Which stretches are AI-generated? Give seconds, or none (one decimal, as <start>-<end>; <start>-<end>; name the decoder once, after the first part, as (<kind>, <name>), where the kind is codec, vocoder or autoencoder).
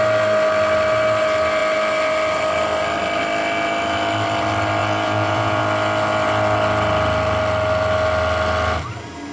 4.8-5.6 (vocoder, Vocos)